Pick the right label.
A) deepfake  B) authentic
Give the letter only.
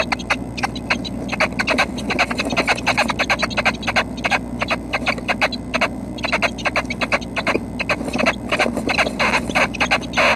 B